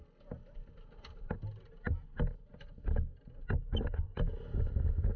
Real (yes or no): yes